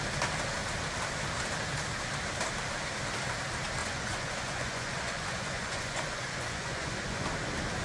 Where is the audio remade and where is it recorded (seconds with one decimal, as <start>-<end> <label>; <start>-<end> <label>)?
0.0-3.8 recorded; 3.8-7.2 remade; 7.2-7.8 recorded